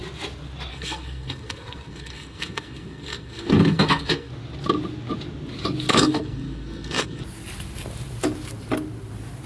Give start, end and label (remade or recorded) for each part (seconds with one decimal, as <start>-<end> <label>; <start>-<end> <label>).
0.0-0.7 recorded; 0.7-4.3 remade; 4.3-5.9 recorded; 5.9-7.2 remade; 7.2-9.5 recorded